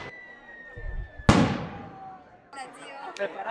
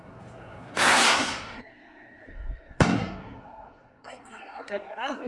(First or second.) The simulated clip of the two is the second